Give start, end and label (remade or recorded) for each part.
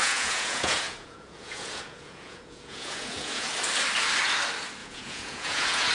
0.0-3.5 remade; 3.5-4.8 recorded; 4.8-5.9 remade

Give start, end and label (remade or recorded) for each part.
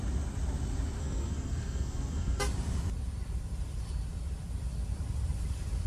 0.0-1.0 recorded; 1.0-2.4 remade; 2.4-5.9 recorded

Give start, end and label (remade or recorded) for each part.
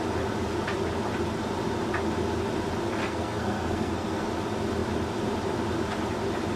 0.0-3.0 recorded; 3.0-4.3 remade; 4.3-6.6 recorded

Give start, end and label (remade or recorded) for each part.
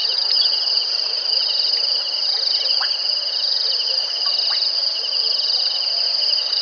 0.0-6.6 recorded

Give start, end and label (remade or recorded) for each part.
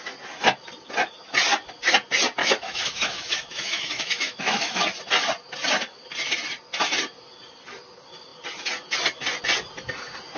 0.0-2.4 recorded; 2.4-4.8 remade; 4.8-10.4 recorded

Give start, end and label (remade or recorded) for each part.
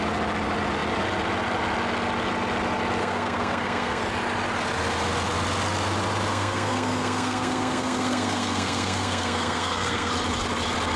0.0-3.0 recorded; 3.0-4.0 remade; 4.0-6.3 recorded; 6.3-10.1 remade; 10.1-11.0 recorded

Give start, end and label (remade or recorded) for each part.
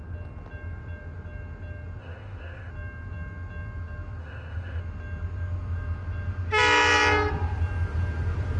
0.0-2.0 recorded; 2.0-2.7 remade; 2.7-4.2 recorded; 4.2-4.8 remade; 4.8-8.6 recorded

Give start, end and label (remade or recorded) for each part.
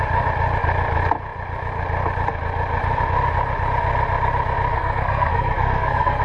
0.0-4.7 recorded; 4.7-6.2 remade